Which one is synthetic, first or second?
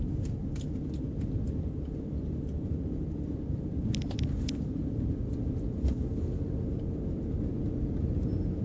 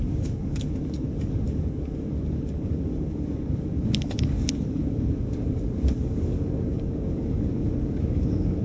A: second